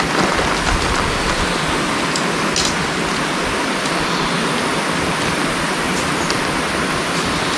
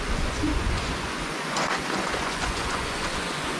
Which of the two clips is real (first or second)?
first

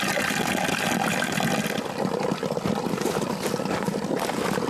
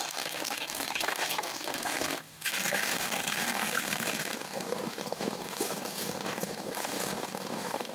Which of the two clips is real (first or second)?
first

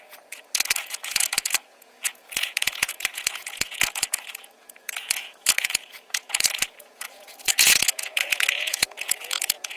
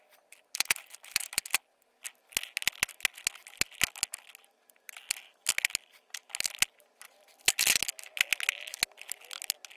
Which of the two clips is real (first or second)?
second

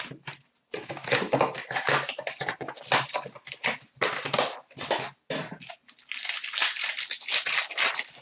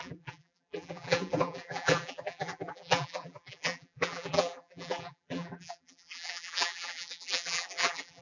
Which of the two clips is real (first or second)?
first